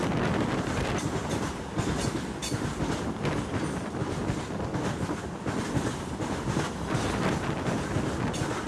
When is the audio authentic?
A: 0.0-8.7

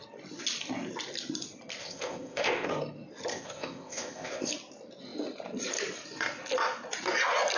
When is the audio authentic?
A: 0.0-1.8; 2.7-3.3; 4.5-7.6

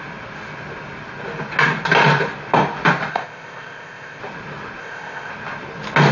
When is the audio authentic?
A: 0.0-3.1; 4.2-4.8; 5.3-6.1

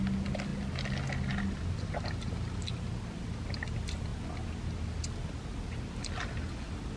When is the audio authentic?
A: 0.0-7.0

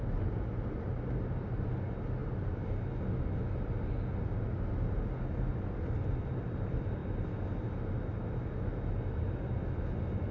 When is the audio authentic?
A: 0.0-10.3

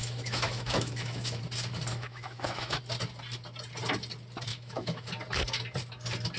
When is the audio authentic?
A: 1.4-1.9; 2.8-4.5; 5.1-6.4